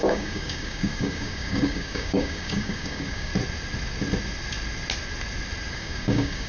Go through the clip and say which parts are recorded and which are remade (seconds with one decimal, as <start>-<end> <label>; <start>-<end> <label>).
0.0-3.3 remade; 3.3-5.7 recorded; 5.7-6.5 remade